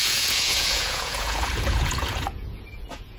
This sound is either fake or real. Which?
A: fake